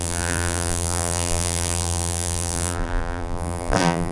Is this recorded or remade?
remade